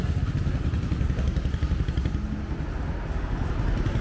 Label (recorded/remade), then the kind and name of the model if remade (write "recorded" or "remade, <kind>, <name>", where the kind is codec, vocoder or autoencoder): recorded